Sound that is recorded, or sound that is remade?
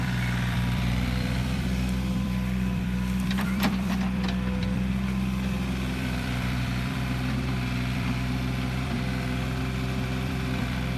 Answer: remade